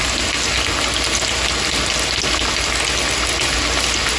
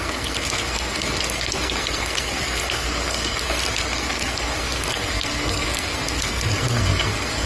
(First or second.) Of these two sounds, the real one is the first